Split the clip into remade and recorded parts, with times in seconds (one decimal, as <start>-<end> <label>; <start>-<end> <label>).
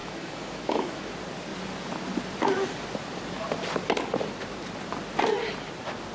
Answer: 0.0-1.1 remade; 1.1-6.1 recorded